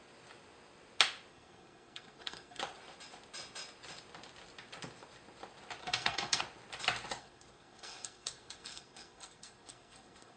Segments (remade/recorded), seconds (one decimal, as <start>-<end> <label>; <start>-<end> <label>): 0.0-1.3 recorded; 1.3-2.6 remade; 2.6-5.8 recorded; 5.8-6.4 remade; 6.4-7.2 recorded; 7.2-10.4 remade